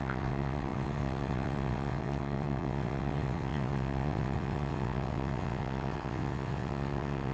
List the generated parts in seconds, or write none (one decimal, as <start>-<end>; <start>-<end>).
0.0-7.3

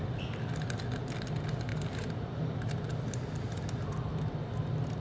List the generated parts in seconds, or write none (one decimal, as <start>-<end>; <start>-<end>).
none

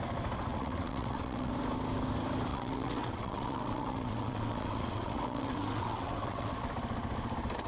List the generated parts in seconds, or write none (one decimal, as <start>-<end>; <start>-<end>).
0.5-1.5; 2.5-6.5

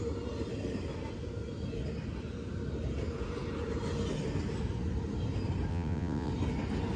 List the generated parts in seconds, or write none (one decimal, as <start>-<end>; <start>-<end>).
5.7-6.3